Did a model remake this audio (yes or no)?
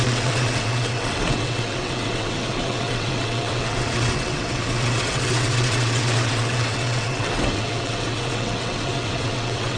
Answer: yes